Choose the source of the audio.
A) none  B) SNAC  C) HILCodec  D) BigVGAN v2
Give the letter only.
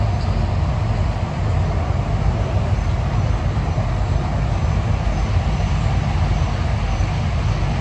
A